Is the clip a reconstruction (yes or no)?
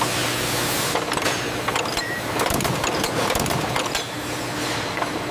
no